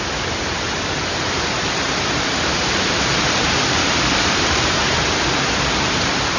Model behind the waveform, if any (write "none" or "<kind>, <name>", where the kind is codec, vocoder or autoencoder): vocoder, BigVGAN v2